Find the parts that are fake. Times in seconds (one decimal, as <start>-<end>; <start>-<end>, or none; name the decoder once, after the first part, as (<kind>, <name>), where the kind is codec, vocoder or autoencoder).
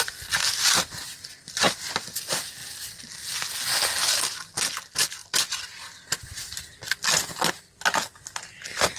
none